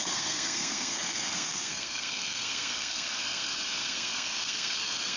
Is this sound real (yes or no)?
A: no